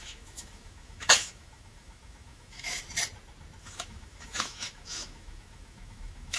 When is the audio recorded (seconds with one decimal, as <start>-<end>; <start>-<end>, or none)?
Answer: 2.8-3.6